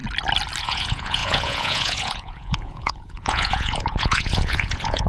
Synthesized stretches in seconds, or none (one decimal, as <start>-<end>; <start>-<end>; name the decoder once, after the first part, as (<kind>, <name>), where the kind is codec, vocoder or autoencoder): 0.6-5.1 (vocoder, Vocos)